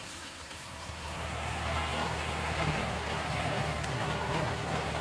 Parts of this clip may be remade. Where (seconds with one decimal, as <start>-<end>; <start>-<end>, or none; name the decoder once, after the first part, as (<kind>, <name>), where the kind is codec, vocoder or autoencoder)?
0.0-5.0 (codec, SNAC)